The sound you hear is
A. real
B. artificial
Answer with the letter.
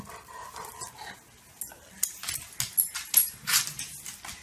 A